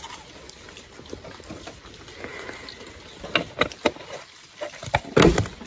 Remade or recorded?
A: recorded